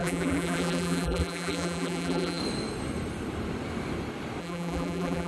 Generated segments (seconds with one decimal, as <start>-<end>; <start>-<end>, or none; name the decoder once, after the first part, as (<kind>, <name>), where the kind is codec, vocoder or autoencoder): 0.0-2.4 (vocoder, BigVGAN v2); 4.4-5.3